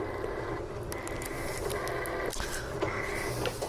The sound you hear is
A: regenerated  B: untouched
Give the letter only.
B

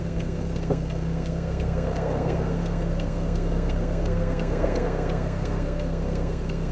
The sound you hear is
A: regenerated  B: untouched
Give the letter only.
A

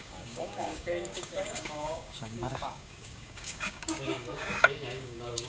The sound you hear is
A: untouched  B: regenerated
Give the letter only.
B